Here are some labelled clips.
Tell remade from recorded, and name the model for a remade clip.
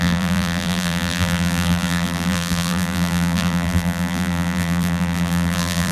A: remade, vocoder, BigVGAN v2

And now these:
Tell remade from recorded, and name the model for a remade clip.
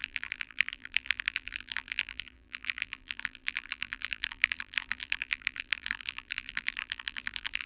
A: remade, vocoder, BigVGAN v2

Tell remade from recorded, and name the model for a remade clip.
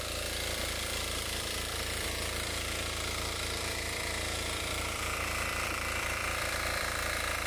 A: remade, vocoder, BigVGAN v2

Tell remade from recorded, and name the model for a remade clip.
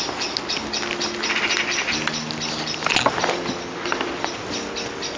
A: recorded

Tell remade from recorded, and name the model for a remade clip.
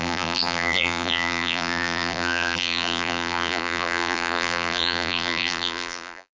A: remade, vocoder, BigVGAN v2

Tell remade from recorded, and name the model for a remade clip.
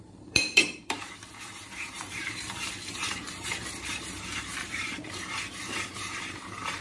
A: remade, vocoder, BigVGAN v2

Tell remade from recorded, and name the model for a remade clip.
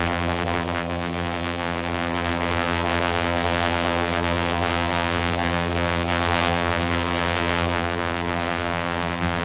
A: remade, vocoder, BigVGAN v2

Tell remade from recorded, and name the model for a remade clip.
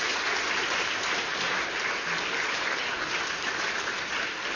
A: remade, vocoder, BigVGAN v2